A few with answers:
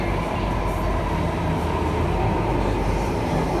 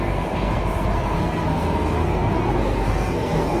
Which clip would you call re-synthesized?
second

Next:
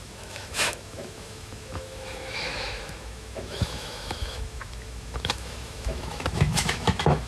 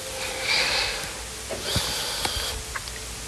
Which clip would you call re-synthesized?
first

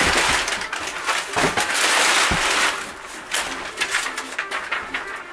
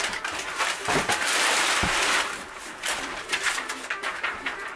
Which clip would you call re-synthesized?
second